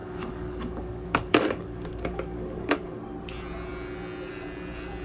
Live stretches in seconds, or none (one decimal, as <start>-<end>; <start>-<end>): 3.0-5.0